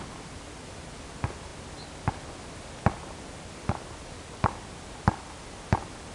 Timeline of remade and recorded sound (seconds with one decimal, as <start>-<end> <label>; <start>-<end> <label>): 0.0-6.1 recorded